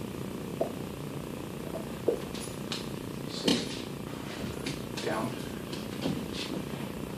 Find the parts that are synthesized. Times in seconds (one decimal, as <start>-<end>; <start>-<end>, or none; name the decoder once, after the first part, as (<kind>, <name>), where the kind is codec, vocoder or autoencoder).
0.0-0.5 (vocoder, BigVGAN v2); 2.3-5.8; 6.5-7.2